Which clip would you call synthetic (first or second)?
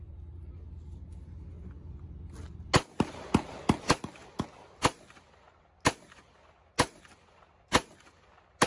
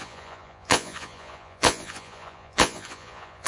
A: second